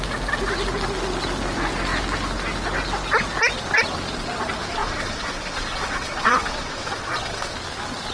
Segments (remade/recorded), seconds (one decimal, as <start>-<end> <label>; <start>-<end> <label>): 0.0-4.8 recorded; 4.8-7.5 remade; 7.5-8.1 recorded